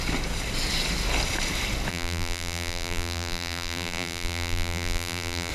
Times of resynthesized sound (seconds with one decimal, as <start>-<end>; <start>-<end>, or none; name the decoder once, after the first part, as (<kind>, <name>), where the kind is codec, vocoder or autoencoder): 1.9-5.5 (vocoder, BigVGAN v2)